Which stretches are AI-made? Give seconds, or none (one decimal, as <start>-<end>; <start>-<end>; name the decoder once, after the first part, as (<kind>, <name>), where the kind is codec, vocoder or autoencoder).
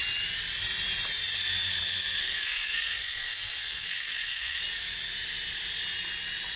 2.2-4.6 (codec, SNAC)